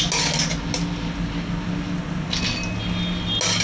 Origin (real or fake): real